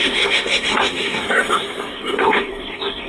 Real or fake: fake